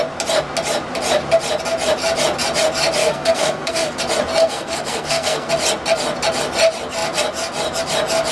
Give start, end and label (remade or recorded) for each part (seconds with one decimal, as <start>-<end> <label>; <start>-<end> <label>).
0.0-3.0 recorded; 3.0-4.0 remade; 4.0-4.4 recorded; 4.4-5.5 remade; 5.5-8.3 recorded